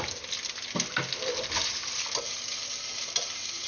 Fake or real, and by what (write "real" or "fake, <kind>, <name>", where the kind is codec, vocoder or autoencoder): real